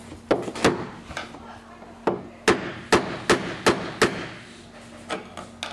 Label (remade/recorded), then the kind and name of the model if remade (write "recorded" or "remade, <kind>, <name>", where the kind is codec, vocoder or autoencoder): recorded